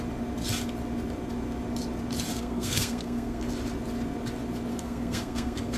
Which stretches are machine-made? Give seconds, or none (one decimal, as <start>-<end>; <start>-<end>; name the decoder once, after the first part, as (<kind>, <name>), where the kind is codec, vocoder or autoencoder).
2.3-3.5 (codec, SNAC); 4.7-5.8